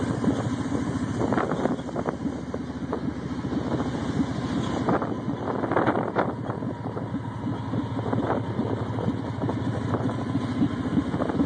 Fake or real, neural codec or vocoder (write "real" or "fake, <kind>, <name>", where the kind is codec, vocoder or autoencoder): real